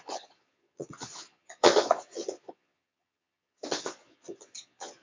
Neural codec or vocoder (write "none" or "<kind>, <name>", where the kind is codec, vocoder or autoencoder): vocoder, Vocos